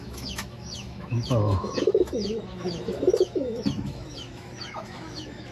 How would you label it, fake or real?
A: fake